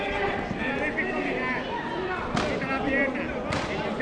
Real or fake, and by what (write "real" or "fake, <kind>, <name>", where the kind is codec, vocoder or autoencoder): real